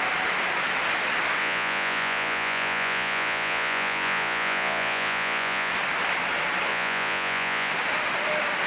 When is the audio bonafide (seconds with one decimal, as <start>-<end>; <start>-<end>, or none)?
0.0-1.4; 5.7-6.7; 7.7-8.7